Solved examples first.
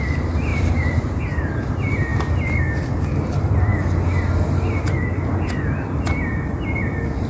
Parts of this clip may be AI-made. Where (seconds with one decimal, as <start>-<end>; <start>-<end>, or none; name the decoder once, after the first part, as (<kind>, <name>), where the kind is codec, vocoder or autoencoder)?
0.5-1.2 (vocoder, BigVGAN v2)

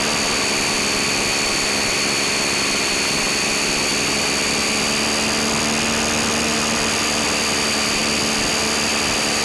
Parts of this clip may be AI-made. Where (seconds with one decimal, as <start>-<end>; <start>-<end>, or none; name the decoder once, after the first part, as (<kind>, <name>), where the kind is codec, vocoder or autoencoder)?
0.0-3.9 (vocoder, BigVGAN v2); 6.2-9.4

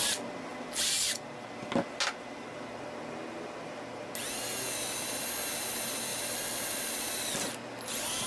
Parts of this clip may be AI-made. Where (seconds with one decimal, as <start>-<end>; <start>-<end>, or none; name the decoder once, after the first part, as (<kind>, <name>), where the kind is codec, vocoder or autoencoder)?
none

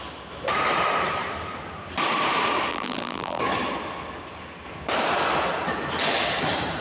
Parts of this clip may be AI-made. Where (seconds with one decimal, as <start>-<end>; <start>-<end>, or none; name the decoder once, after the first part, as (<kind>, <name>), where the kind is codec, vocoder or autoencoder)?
2.7-3.4 (vocoder, BigVGAN v2)

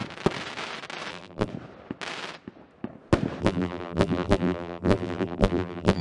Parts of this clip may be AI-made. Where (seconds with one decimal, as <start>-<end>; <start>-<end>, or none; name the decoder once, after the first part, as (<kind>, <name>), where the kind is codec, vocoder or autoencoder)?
1.1-1.5 (vocoder, BigVGAN v2); 3.4-6.0

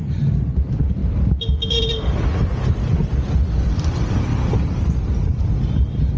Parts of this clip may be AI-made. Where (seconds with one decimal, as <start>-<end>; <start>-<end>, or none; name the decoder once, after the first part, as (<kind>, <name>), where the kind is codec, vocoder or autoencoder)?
0.0-1.0 (vocoder, BigVGAN v2); 3.6-4.3; 5.4-6.2

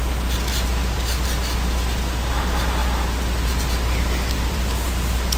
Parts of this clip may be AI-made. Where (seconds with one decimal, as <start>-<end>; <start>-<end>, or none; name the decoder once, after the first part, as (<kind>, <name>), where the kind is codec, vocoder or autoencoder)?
2.8-4.9 (vocoder, BigVGAN v2)